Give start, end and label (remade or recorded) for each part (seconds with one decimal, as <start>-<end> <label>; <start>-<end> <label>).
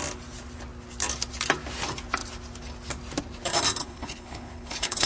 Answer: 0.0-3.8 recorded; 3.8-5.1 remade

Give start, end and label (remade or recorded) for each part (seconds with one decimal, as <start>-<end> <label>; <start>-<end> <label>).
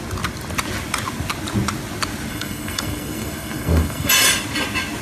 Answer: 0.0-2.3 recorded; 2.3-4.1 remade; 4.1-5.0 recorded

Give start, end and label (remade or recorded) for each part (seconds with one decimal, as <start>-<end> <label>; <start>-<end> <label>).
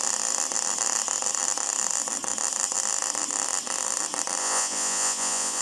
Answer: 0.0-4.4 recorded; 4.4-5.6 remade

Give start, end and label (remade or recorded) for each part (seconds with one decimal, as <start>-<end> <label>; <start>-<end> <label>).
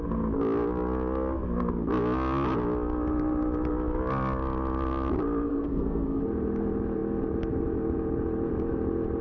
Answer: 0.0-5.5 recorded; 5.5-6.2 remade; 6.2-9.2 recorded